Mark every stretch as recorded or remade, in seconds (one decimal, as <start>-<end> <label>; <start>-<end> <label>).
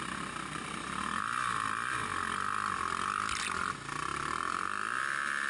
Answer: 0.0-5.5 recorded